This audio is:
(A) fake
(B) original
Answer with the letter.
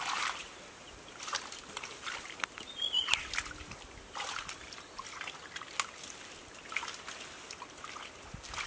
B